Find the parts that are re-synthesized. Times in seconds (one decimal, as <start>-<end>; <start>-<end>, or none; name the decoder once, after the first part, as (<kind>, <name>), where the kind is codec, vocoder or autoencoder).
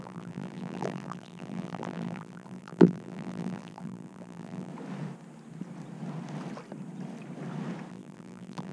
0.0-4.7 (vocoder, BigVGAN v2); 7.9-8.7